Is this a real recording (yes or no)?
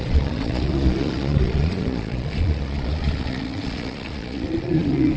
no